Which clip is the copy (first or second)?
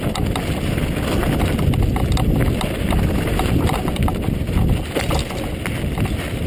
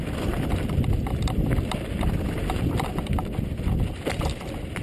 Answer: second